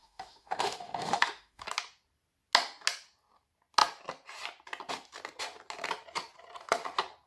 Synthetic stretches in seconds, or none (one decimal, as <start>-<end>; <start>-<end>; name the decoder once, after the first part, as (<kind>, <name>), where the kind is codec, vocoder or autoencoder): 0.0-1.6 (autoencoder, DAC-VAE)